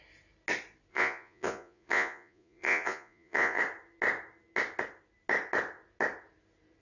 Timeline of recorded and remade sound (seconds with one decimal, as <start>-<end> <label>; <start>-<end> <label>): 0.0-0.9 recorded; 0.9-3.6 remade; 3.6-6.8 recorded